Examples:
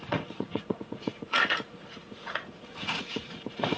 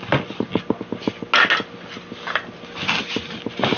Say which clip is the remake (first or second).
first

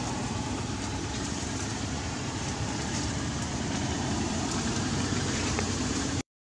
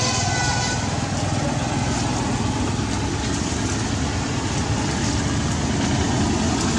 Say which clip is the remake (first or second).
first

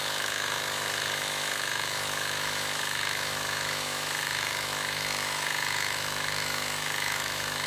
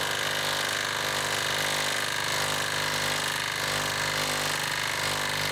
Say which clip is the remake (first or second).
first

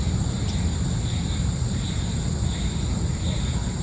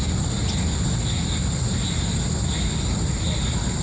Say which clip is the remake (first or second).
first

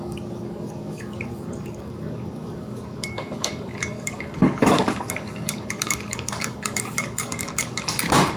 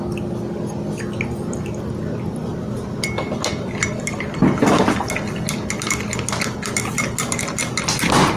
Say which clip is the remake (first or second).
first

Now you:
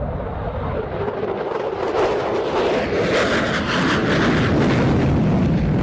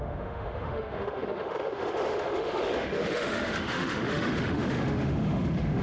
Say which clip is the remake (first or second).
second